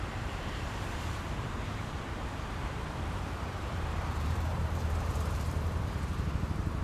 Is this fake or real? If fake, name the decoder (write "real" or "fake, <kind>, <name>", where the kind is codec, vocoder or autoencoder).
fake, vocoder, BigVGAN v2